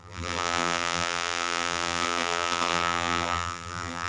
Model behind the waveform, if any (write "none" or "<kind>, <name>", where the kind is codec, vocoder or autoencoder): vocoder, BigVGAN v2